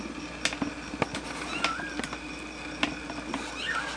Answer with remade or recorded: recorded